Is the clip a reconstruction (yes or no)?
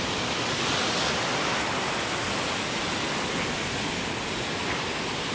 no